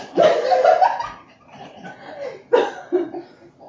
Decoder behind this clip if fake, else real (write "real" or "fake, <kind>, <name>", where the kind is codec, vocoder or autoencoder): real